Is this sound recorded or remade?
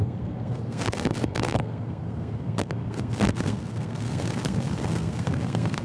remade